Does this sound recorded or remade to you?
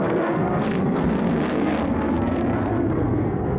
remade